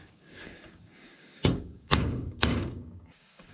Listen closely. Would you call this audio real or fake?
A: fake